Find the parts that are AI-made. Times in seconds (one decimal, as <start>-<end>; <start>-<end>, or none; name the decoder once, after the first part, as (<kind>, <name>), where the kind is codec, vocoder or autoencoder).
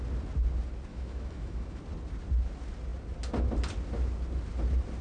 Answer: 0.9-1.8 (autoencoder, DAC-VAE)